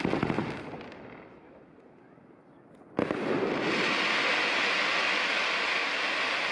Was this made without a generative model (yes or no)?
yes